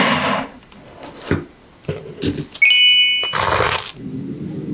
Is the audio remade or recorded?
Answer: recorded